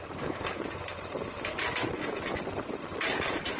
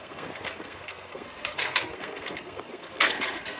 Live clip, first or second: first